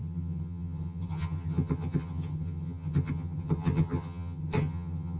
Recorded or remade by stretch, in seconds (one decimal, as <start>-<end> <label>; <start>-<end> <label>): 0.0-5.2 remade